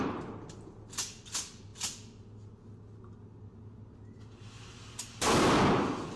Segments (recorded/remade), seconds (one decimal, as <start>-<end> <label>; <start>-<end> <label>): 0.0-6.2 recorded